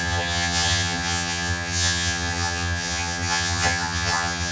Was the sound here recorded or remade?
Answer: remade